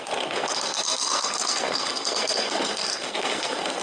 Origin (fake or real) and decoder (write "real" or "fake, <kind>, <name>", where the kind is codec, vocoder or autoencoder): fake, codec, SNAC